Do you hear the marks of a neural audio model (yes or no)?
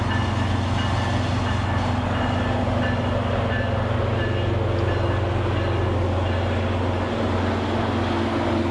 no